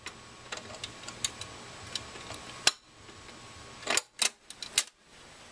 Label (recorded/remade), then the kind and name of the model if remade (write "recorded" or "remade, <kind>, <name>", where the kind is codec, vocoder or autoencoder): recorded